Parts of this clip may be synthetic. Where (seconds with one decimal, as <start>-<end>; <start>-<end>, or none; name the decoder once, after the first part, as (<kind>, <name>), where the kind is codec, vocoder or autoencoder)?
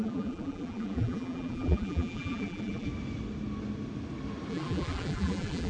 0.0-2.9 (vocoder, BigVGAN v2); 4.5-5.7